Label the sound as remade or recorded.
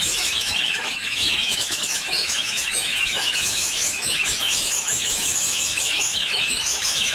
remade